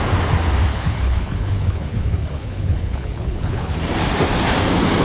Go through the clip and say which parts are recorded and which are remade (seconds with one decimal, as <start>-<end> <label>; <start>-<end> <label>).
0.0-0.7 recorded; 0.7-3.7 remade; 3.7-5.0 recorded